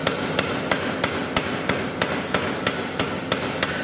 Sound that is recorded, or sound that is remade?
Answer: recorded